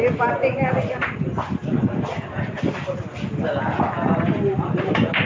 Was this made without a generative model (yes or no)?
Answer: yes